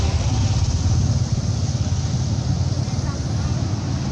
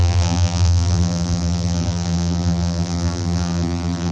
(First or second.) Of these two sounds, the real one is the first